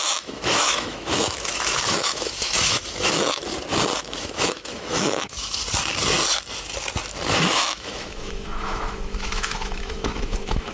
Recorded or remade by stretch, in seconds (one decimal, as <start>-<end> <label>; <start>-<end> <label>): 0.0-3.4 remade; 3.4-4.0 recorded; 4.0-5.6 remade; 5.6-7.5 recorded; 7.5-10.7 remade